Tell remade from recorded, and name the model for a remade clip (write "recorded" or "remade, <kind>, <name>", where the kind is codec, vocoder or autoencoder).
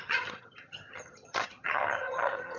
remade, vocoder, HiFi-GAN